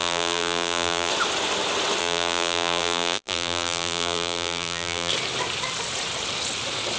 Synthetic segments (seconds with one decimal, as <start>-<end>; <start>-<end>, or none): 0.0-1.1; 2.0-5.1